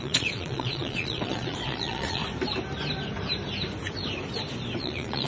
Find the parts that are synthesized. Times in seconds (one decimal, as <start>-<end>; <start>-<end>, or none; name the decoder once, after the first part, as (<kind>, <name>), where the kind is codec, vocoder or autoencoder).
0.0-2.2 (vocoder, Vocos); 4.8-5.3